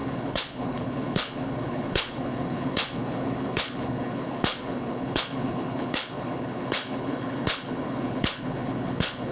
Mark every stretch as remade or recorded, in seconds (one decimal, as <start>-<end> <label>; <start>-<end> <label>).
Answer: 0.0-9.3 remade